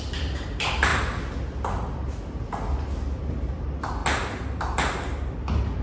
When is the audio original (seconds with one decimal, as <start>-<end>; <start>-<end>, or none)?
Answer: 0.9-3.3; 4.0-5.8